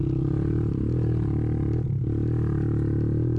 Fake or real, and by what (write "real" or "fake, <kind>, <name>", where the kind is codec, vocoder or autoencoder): real